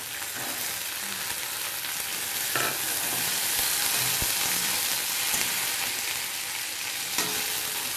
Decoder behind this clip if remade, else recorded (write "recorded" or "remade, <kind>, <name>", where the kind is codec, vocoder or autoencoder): recorded